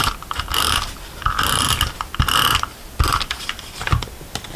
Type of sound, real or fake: real